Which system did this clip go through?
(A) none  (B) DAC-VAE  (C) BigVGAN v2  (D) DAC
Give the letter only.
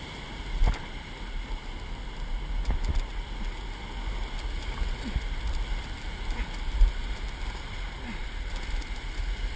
A